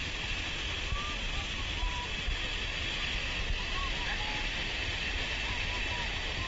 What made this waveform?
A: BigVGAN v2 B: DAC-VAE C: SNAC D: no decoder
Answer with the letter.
D